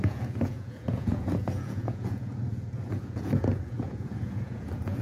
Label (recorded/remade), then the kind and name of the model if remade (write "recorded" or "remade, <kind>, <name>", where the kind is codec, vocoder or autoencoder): remade, vocoder, Vocos